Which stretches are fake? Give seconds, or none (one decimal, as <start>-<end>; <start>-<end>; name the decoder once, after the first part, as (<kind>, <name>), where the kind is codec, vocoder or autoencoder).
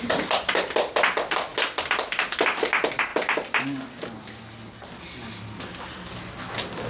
none